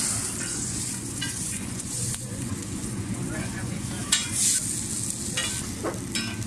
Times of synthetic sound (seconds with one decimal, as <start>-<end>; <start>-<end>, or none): 0.5-4.4